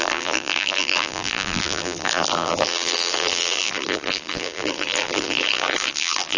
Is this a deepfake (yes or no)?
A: yes